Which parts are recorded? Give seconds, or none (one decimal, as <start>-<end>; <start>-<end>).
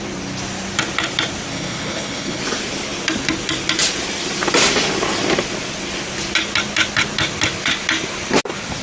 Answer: 0.0-1.5; 2.4-8.8